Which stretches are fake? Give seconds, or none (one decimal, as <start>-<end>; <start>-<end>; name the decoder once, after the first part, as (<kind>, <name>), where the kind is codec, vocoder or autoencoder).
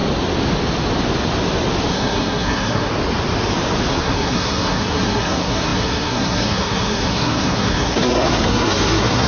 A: 1.9-2.9 (codec, SNAC); 3.9-9.3